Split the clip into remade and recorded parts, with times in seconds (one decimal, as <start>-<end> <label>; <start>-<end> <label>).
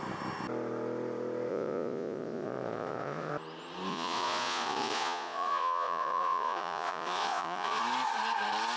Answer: 0.0-1.5 recorded; 1.5-3.3 remade; 3.3-3.9 recorded; 3.9-7.8 remade; 7.8-8.8 recorded